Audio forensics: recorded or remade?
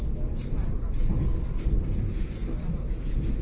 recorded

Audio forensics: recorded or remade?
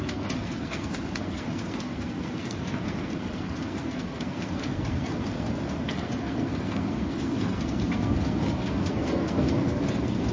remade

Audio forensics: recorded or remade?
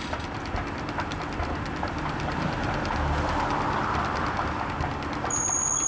recorded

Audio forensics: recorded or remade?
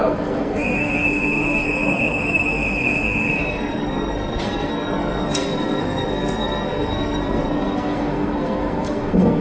remade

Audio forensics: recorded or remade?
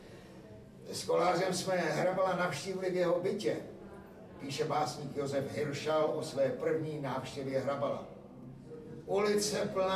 recorded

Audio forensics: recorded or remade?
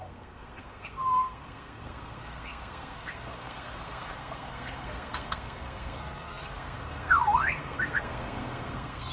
remade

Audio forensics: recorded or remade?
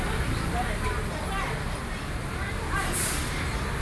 recorded